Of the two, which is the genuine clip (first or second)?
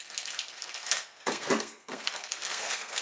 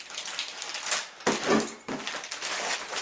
second